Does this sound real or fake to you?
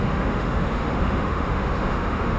fake